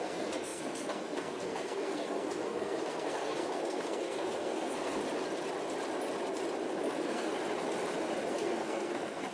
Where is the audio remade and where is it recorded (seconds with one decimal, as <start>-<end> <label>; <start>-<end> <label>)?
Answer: 0.0-5.0 remade; 5.0-6.8 recorded; 6.8-7.3 remade; 7.3-8.3 recorded; 8.3-9.3 remade